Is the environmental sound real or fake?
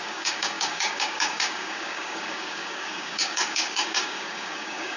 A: fake